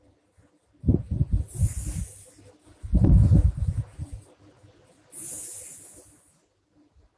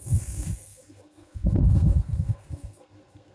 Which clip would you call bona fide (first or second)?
first